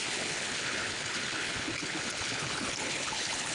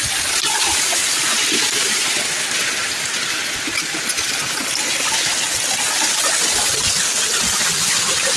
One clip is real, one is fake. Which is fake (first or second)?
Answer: first